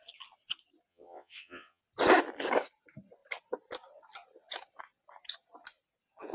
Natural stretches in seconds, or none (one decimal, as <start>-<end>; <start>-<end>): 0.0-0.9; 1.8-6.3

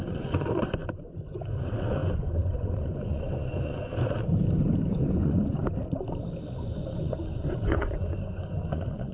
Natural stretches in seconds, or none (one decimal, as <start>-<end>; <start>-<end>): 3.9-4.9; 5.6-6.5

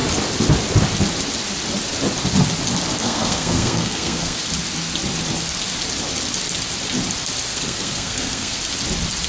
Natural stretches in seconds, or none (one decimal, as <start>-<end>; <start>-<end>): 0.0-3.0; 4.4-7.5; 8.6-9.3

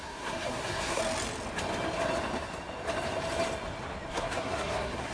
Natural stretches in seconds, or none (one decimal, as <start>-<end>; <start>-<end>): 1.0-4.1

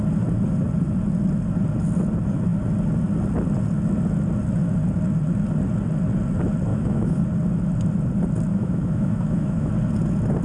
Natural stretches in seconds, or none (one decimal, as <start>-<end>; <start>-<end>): 0.0-6.7; 7.2-8.5; 9.7-10.4

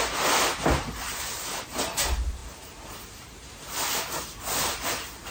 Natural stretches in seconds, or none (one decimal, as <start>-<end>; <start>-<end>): 0.0-5.3

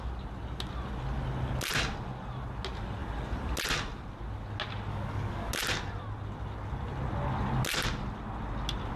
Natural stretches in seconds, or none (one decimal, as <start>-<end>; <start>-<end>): 0.0-4.9; 5.5-9.0